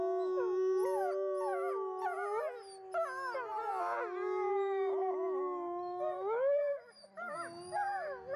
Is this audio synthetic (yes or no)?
no